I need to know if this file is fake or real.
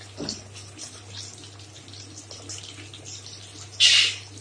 real